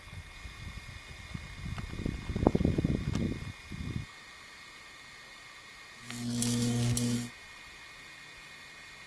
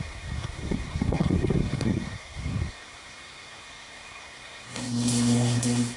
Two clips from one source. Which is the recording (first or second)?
first